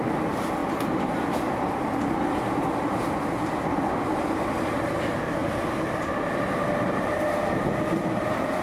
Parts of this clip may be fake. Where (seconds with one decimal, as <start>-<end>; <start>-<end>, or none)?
5.4-7.4